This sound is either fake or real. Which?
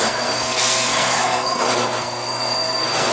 fake